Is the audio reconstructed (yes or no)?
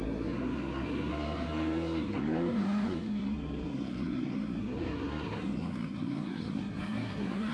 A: yes